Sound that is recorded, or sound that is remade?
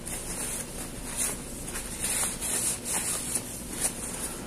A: recorded